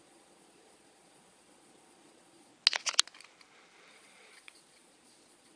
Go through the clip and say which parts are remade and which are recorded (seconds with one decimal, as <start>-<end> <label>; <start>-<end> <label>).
0.0-2.5 remade; 2.5-3.9 recorded; 3.9-5.6 remade